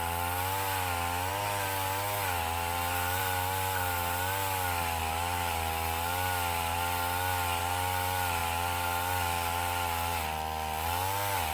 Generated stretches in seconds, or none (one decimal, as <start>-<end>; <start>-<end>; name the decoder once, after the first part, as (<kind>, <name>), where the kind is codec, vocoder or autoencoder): none